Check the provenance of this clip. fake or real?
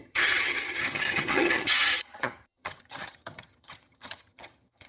fake